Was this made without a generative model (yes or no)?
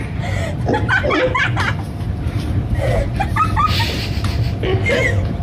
yes